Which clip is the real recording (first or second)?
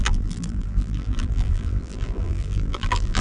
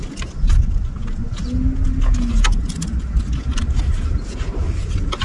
second